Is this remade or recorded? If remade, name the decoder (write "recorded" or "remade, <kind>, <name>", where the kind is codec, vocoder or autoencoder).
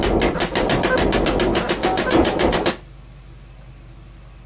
recorded